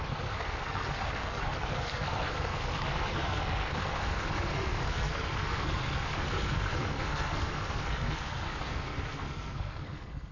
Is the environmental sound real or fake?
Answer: fake